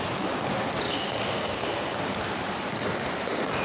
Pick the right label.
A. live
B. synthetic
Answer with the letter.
A